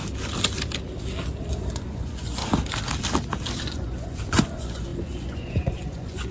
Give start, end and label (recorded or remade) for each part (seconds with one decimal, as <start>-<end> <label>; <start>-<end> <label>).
0.0-1.5 recorded; 1.5-2.4 remade; 2.4-3.6 recorded; 3.6-6.3 remade